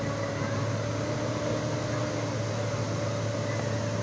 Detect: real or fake real